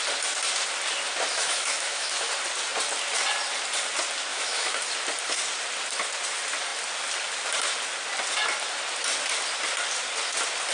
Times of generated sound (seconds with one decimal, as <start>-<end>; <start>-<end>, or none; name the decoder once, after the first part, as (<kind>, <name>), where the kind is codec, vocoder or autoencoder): 1.3-2.3 (autoencoder, DAC-VAE); 4.3-4.8